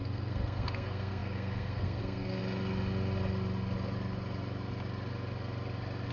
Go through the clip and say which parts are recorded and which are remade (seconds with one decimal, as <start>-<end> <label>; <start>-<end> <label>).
0.0-2.4 remade; 2.4-6.1 recorded